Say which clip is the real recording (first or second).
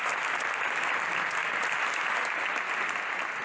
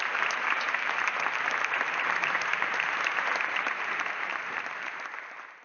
first